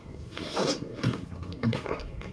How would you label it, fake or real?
fake